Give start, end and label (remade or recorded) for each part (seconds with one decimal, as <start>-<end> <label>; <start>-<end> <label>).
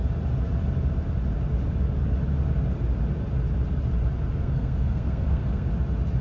0.0-4.4 recorded; 4.4-5.7 remade; 5.7-6.2 recorded